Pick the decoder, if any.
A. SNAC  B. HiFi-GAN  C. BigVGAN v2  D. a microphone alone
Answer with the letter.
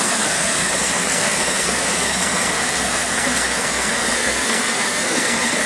A